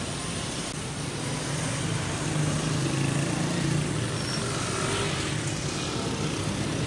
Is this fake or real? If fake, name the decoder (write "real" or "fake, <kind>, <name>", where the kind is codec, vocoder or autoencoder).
real